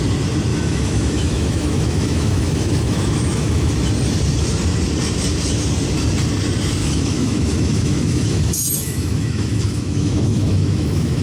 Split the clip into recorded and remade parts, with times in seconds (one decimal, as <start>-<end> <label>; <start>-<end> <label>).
0.0-0.5 recorded; 0.5-3.7 remade; 3.7-6.8 recorded; 6.8-11.2 remade